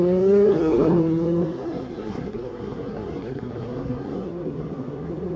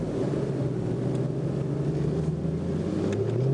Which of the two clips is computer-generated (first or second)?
first